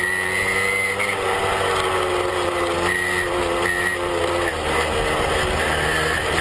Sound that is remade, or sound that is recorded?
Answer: recorded